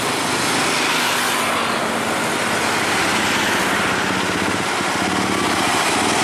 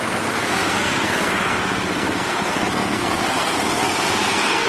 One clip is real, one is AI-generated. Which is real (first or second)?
first